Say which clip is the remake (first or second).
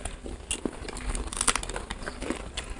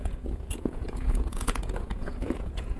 second